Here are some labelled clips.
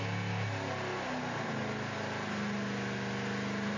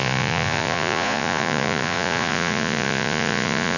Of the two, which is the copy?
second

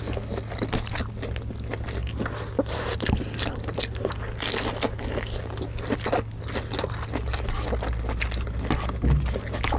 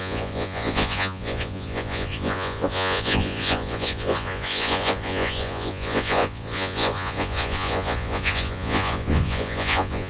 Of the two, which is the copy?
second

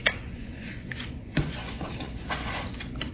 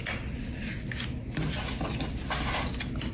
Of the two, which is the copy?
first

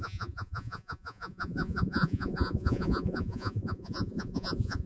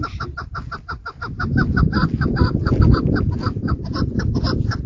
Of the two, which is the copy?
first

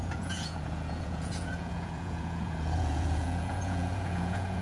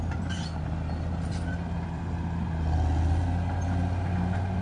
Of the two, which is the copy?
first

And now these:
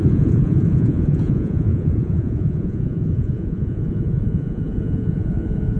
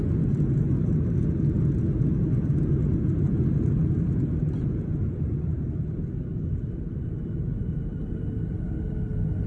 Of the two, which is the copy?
first